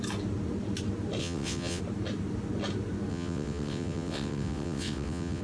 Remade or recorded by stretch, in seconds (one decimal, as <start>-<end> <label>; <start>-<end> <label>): 0.0-1.2 recorded; 1.2-1.8 remade; 1.8-3.1 recorded; 3.1-5.4 remade